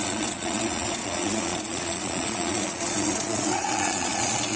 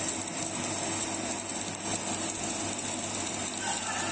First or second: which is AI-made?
first